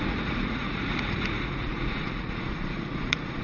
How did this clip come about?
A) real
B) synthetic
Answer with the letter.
B